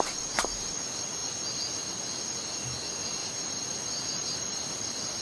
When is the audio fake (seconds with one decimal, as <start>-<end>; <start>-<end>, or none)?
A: none